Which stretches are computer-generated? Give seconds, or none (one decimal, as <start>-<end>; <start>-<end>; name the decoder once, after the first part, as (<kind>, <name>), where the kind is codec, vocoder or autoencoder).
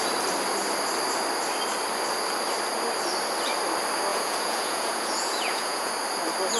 4.1-5.9 (vocoder, Vocos)